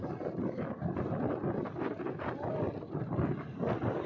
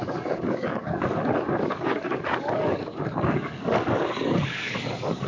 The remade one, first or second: second